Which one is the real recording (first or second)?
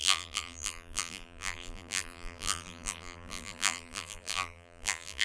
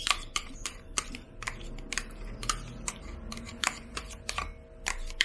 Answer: second